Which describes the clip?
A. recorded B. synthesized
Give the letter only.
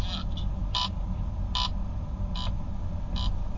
A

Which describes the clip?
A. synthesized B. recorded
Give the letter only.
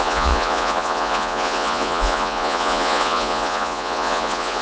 A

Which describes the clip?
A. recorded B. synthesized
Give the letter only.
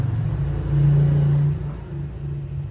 A